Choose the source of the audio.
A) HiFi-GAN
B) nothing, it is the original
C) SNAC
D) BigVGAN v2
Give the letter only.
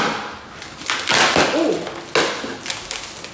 B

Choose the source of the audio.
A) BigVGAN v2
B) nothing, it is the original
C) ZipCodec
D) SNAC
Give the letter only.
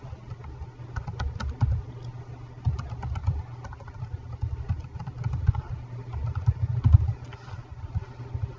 B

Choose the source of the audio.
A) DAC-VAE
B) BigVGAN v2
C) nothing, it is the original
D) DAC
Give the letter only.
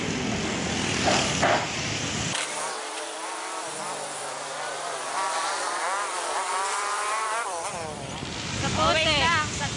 B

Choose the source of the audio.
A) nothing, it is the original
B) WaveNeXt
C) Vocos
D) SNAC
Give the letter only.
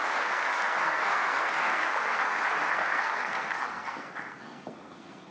D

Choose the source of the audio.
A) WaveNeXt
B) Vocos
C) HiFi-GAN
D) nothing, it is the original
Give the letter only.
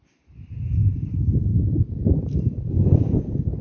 D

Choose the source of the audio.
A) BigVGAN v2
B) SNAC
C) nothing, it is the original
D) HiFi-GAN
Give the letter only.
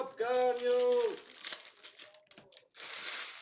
C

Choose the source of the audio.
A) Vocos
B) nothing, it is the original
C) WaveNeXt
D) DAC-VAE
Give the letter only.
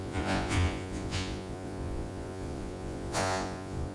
A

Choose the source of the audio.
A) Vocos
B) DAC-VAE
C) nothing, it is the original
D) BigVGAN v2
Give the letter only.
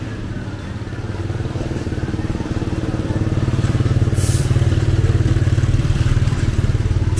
D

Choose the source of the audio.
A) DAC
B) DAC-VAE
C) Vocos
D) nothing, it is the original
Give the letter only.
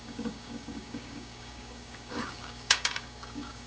A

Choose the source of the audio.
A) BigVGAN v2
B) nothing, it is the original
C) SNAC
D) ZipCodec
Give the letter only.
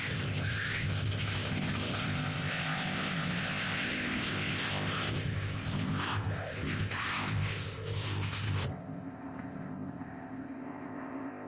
D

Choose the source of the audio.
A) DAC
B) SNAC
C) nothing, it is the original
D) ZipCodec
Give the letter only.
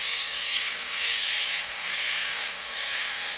B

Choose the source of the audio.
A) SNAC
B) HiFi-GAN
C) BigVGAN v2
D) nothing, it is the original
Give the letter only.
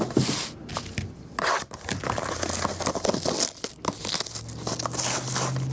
D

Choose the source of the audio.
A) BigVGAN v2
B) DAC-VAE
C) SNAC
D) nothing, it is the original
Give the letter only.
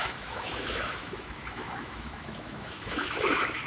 B